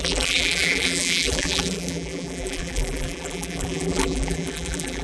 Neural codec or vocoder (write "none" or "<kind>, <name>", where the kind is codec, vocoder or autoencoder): vocoder, BigVGAN v2